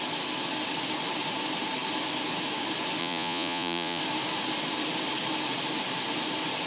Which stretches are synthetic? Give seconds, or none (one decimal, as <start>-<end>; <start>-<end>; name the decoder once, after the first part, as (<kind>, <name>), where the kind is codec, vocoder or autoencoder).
3.0-4.0 (vocoder, Vocos)

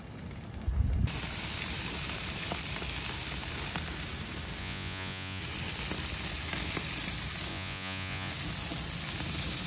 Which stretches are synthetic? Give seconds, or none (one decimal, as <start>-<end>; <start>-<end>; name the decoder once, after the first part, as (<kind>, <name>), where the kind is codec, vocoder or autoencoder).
4.6-5.4 (vocoder, Vocos); 7.5-8.3

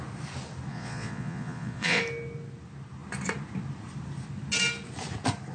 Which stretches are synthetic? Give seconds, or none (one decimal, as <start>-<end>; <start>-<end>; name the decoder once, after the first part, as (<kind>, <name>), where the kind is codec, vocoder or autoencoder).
0.7-2.0 (vocoder, Vocos)

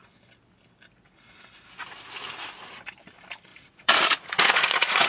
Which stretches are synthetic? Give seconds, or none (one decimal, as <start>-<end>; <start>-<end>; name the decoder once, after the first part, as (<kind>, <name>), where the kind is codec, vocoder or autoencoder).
3.5-5.1 (vocoder, Vocos)

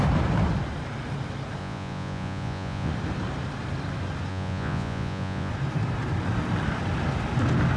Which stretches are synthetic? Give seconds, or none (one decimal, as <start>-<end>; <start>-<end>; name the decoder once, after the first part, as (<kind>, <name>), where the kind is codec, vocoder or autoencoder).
1.6-2.9 (vocoder, Vocos); 4.3-5.5

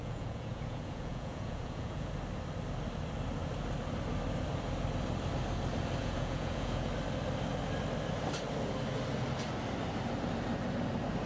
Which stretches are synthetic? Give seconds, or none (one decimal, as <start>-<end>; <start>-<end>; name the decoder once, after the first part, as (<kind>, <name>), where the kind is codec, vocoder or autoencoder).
0.0-2.1 (vocoder, Vocos); 6.0-6.9

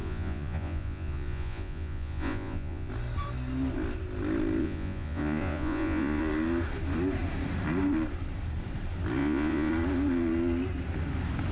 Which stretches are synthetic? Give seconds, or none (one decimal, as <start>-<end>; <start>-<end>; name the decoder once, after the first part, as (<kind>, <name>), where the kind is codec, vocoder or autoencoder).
0.0-2.9 (vocoder, Vocos); 4.6-6.2; 9.2-9.7

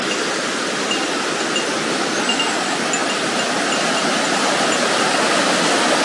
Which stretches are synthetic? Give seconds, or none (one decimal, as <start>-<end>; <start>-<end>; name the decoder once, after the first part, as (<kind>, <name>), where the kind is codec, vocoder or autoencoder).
none